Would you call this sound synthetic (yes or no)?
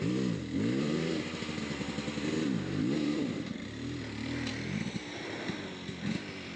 yes